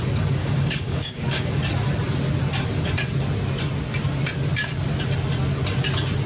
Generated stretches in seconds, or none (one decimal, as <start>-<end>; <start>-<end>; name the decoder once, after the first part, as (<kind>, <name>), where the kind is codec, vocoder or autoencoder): 0.4-1.5 (codec, DAC)